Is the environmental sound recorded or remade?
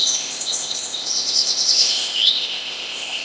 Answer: remade